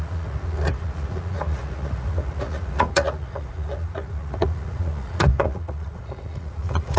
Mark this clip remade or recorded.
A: remade